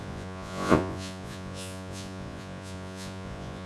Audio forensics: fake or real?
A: fake